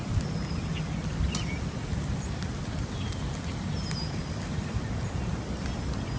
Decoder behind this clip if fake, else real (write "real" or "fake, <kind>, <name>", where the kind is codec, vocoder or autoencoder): real